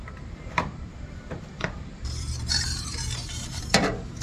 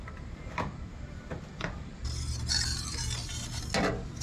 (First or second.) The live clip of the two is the second